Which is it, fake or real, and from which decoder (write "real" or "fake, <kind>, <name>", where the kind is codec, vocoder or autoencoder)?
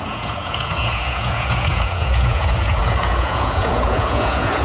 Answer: fake, vocoder, Vocos